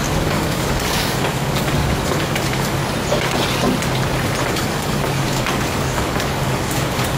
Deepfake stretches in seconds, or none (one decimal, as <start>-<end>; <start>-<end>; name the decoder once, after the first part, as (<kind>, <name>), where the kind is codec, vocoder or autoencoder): 0.0-2.8 (codec, DAC); 4.4-7.2